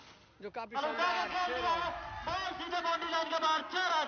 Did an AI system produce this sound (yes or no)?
no